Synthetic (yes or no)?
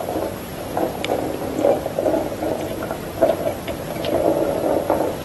yes